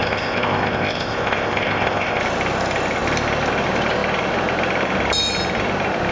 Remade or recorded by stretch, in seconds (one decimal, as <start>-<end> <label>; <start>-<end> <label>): 0.0-2.2 remade; 2.2-6.1 recorded